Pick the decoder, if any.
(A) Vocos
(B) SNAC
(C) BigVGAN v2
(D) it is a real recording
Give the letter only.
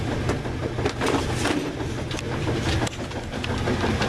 D